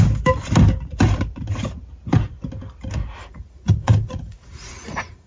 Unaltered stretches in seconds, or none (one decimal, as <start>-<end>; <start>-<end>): 0.0-3.2